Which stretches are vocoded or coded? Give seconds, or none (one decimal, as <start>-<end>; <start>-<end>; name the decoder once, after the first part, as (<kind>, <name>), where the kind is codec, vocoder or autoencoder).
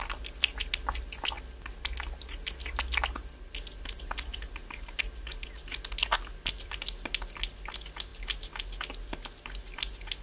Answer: none